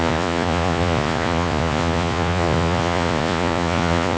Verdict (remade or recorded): remade